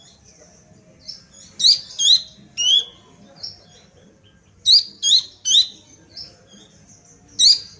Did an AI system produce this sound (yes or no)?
no